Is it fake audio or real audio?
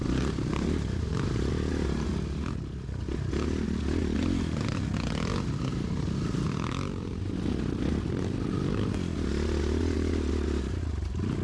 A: real